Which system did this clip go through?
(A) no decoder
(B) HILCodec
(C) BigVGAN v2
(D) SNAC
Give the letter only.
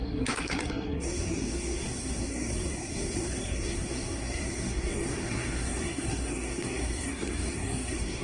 D